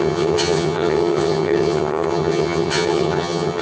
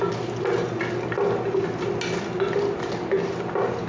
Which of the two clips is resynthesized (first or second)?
first